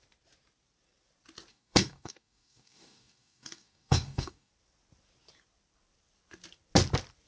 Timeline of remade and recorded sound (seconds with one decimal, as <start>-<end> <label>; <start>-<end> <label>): 0.0-1.5 recorded; 1.5-4.5 remade; 4.5-7.3 recorded